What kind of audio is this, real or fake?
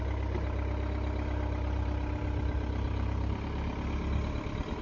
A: real